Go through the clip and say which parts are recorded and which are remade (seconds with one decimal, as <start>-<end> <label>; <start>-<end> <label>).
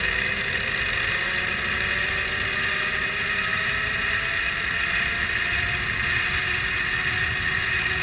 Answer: 0.0-8.0 recorded